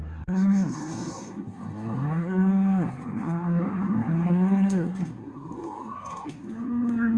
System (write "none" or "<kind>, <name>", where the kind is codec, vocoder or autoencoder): codec, SNAC